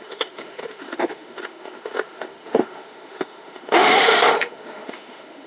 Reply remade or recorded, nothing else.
remade